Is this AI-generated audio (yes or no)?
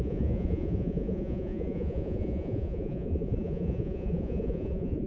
yes